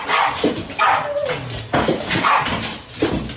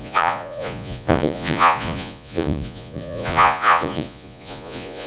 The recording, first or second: first